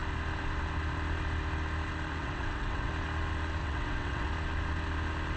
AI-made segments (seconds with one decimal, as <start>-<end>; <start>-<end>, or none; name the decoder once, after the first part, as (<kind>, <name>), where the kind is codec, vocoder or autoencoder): 2.2-2.9 (vocoder, WaveNeXt); 3.6-4.3